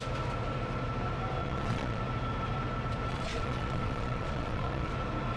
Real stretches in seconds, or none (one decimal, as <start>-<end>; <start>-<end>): 0.0-1.4; 2.0-3.1; 4.9-5.4

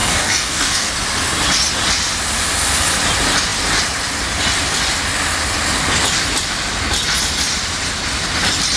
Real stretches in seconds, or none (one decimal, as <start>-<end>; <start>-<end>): 0.9-8.8